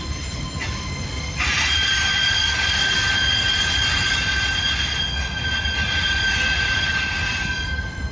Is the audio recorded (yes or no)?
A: yes